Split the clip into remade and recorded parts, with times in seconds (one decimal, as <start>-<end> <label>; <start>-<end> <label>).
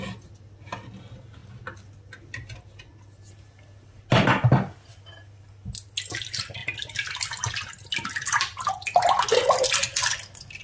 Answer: 0.0-10.6 recorded